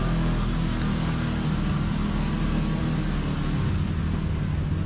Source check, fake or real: real